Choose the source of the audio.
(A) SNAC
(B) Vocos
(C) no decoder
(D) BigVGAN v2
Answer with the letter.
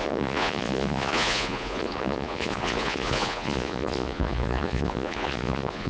B